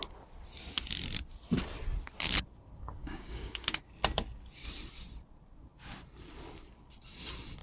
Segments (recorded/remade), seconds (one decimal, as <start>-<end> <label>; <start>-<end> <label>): 0.0-3.0 recorded; 3.0-3.8 remade; 3.8-7.6 recorded